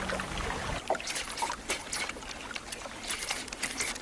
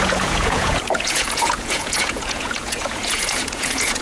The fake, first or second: second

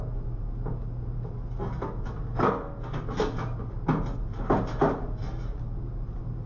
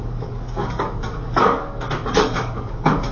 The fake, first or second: second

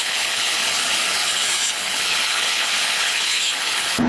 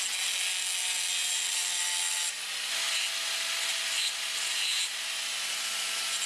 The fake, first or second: first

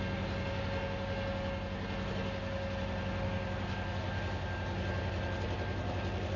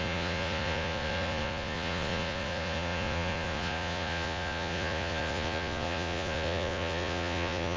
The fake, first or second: second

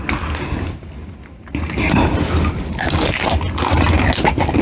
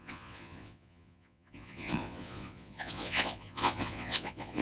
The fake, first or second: second